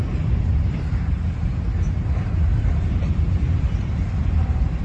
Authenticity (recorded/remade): remade